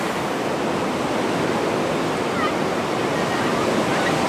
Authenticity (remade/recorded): recorded